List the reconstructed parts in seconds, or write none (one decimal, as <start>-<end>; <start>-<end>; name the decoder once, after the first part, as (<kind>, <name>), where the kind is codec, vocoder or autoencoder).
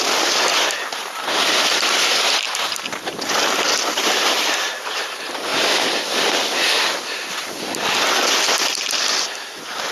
none